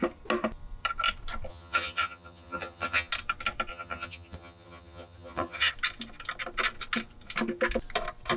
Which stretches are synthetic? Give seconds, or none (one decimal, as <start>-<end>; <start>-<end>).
1.5-3.1; 3.7-5.7